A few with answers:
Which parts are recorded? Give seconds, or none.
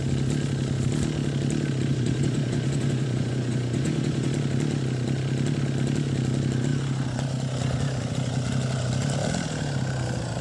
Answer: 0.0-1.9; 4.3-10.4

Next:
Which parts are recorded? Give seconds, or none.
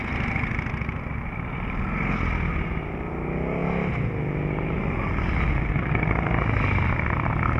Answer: 0.0-7.6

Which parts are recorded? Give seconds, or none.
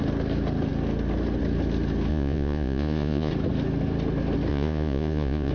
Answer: 0.0-2.1; 3.3-4.5